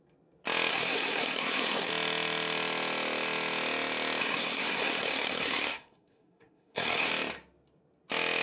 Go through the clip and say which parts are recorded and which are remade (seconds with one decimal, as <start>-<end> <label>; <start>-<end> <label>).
0.0-0.7 recorded; 0.7-1.9 remade; 1.9-4.2 recorded; 4.2-7.1 remade; 7.1-8.4 recorded